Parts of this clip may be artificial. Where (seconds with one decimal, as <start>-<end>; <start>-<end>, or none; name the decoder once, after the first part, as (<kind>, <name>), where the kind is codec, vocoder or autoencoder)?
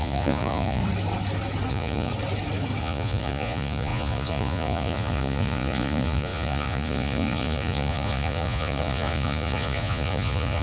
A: 0.0-0.8 (vocoder, Vocos); 1.7-2.1; 2.8-10.6